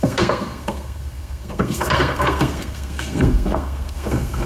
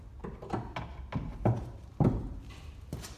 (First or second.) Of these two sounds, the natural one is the second